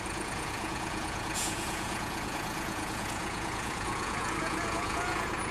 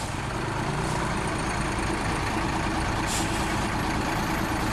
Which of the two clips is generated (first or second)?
first